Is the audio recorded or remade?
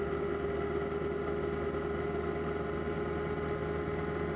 recorded